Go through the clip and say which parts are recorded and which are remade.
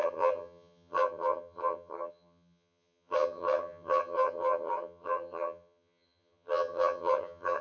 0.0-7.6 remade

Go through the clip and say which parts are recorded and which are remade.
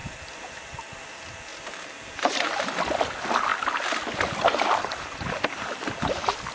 0.0-6.5 recorded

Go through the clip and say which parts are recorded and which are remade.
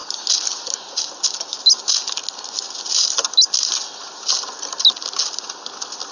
0.0-6.1 recorded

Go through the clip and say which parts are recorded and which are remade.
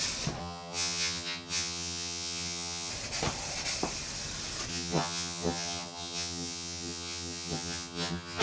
0.0-0.4 recorded; 0.4-2.9 remade; 2.9-4.7 recorded; 4.7-8.4 remade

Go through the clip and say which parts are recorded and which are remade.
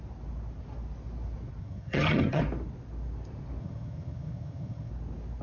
0.0-1.6 recorded; 1.6-2.4 remade; 2.4-3.6 recorded; 3.6-4.9 remade; 4.9-5.4 recorded